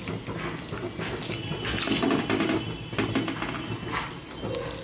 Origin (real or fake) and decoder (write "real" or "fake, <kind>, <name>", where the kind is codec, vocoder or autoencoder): real